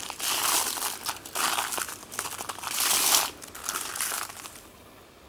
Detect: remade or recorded recorded